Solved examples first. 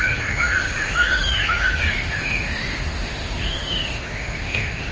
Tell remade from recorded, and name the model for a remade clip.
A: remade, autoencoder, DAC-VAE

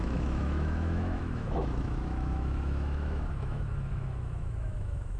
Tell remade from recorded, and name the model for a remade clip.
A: remade, autoencoder, DAC-VAE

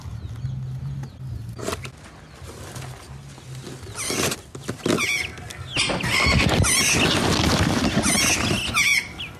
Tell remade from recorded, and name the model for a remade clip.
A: recorded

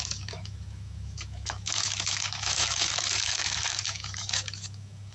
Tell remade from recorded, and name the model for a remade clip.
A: remade, autoencoder, DAC-VAE